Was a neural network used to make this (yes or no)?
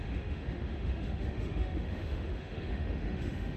yes